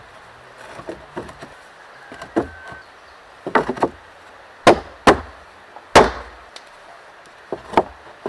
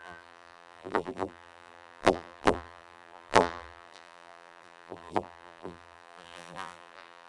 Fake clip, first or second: second